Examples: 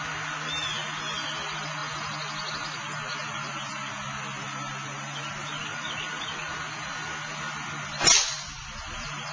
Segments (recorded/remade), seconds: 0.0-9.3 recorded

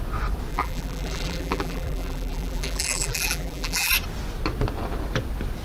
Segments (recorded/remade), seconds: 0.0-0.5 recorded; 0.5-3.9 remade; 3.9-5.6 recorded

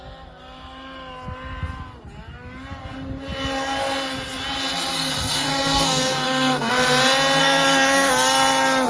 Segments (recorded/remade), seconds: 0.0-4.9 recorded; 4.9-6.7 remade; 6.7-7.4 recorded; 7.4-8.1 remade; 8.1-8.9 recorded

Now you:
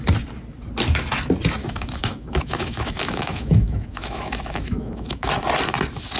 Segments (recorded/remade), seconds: 0.0-1.6 recorded; 1.6-5.3 remade; 5.3-6.2 recorded

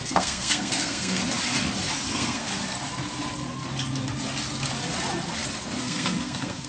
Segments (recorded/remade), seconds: 0.0-1.2 remade; 1.2-2.1 recorded; 2.1-2.5 remade; 2.5-5.8 recorded; 5.8-6.7 remade

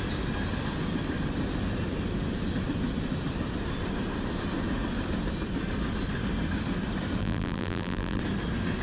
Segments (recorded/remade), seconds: 0.0-7.2 recorded; 7.2-8.2 remade; 8.2-8.8 recorded